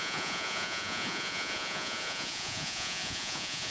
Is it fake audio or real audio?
fake